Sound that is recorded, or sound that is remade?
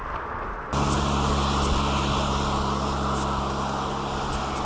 recorded